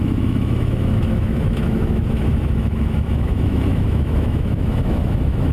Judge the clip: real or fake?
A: fake